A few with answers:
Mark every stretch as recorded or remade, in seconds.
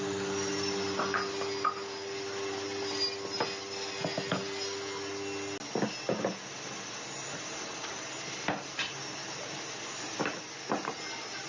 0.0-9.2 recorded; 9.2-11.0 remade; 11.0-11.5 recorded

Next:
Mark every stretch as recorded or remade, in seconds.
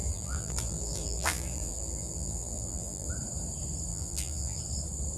0.0-3.1 remade; 3.1-3.9 recorded; 3.9-4.6 remade; 4.6-5.2 recorded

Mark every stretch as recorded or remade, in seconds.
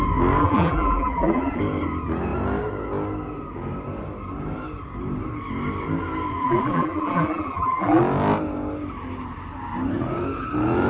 0.0-0.4 recorded; 0.4-1.6 remade; 1.6-6.4 recorded; 6.4-8.0 remade; 8.0-10.9 recorded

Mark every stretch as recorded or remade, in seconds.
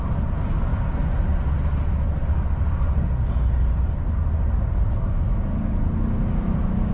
0.0-6.9 recorded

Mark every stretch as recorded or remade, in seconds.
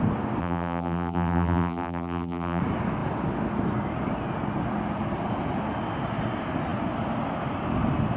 0.0-0.4 recorded; 0.4-2.6 remade; 2.6-8.2 recorded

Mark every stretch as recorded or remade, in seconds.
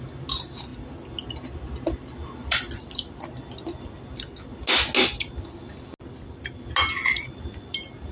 0.0-8.1 recorded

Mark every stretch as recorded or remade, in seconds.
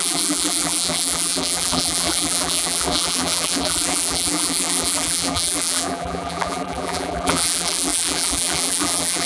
0.0-9.3 remade